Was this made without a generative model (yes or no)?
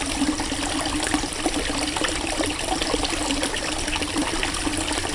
yes